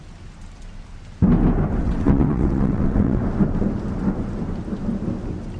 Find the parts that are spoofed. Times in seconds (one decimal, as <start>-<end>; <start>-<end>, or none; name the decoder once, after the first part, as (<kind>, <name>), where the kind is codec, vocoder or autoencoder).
1.8-3.2 (vocoder, WaveNeXt)